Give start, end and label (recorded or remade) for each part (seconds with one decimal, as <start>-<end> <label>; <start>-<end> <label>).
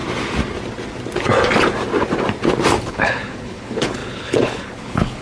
0.0-2.8 recorded; 2.8-5.2 remade